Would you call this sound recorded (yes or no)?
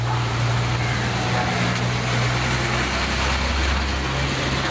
yes